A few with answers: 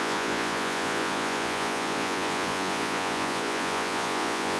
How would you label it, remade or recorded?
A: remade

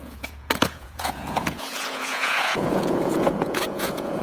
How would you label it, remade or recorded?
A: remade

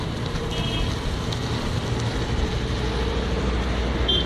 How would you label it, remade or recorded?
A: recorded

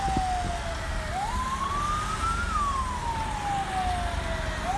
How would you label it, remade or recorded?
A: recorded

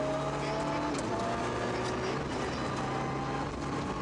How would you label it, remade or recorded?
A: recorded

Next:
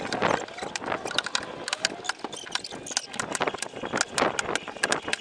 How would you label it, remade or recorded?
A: recorded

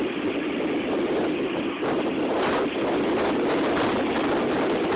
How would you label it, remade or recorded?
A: recorded